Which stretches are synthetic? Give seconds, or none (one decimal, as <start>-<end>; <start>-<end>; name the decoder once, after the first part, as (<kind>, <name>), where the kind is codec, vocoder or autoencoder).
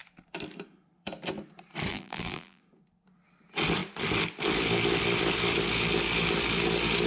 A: 1.9-2.6 (vocoder, BigVGAN v2)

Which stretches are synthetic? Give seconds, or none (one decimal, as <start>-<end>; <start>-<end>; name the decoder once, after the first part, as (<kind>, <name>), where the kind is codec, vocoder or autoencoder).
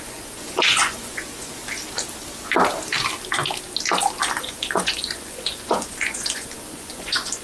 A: 0.0-1.6 (vocoder, Vocos); 4.4-7.4